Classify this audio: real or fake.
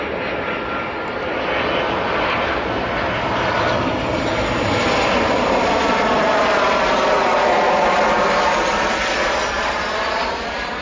real